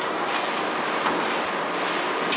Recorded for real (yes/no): yes